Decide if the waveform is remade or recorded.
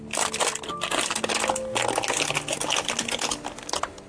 recorded